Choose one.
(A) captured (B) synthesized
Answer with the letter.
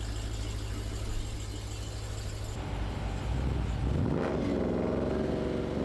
A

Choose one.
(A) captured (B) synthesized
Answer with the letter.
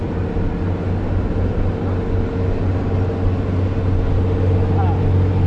A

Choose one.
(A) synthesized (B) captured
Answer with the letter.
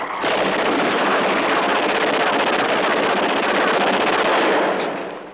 B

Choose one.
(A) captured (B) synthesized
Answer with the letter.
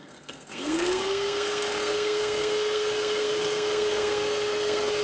B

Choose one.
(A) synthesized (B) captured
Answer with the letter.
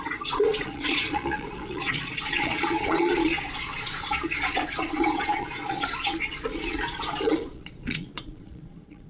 A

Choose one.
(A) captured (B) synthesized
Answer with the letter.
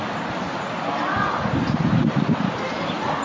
A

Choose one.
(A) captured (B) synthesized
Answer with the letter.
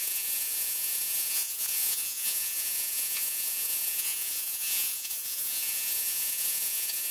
B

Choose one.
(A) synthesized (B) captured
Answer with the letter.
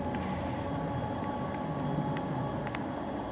B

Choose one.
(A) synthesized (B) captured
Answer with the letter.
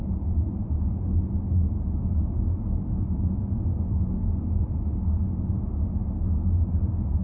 B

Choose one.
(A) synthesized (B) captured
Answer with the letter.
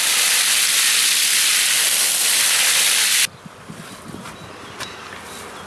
B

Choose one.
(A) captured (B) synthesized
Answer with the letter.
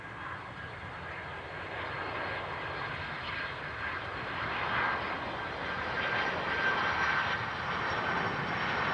A